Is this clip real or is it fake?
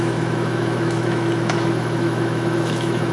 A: fake